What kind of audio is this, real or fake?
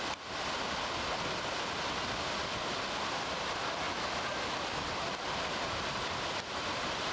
real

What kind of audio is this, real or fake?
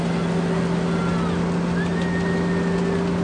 real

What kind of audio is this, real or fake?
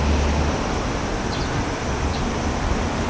real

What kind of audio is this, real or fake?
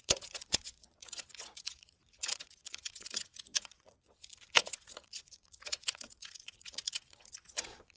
fake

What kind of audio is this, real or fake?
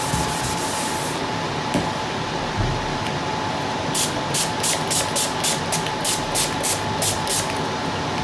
real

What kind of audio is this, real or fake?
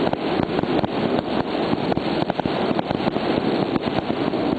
real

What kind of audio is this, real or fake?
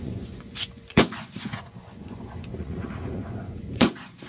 fake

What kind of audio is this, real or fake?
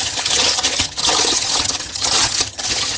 fake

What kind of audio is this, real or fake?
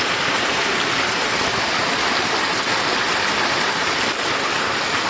real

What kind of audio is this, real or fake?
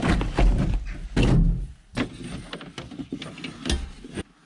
real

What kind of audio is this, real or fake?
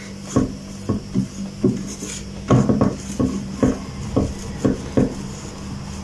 real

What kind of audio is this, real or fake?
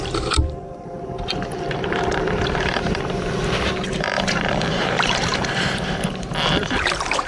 fake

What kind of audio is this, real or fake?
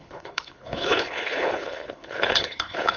fake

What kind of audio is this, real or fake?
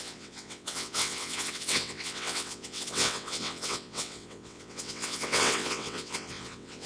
fake